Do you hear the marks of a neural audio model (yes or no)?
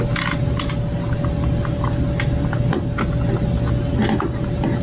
no